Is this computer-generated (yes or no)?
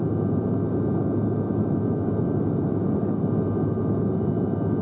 no